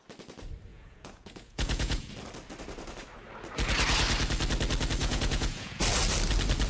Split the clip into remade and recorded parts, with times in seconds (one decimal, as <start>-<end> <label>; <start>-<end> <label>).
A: 0.0-0.7 recorded; 0.7-2.1 remade; 2.1-5.0 recorded; 5.0-5.8 remade; 5.8-6.7 recorded